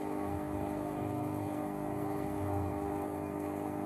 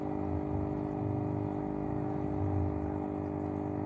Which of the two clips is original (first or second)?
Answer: second